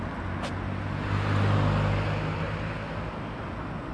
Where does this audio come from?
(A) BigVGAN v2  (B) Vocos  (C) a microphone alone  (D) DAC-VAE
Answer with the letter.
C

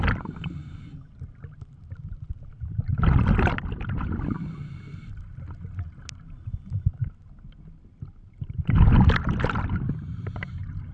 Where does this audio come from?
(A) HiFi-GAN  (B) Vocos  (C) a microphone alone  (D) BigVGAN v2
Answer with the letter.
C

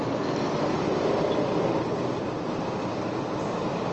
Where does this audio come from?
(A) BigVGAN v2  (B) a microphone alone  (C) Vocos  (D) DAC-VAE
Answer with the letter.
B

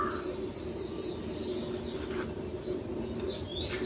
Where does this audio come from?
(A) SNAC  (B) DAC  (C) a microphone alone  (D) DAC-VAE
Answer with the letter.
C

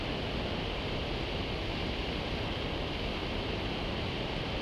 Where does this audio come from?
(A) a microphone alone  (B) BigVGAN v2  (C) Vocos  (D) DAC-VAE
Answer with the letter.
B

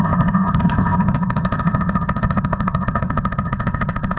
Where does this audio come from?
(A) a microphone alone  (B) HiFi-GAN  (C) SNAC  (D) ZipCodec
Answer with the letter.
D